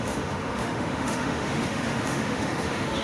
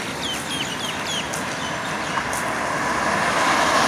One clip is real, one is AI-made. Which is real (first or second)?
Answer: second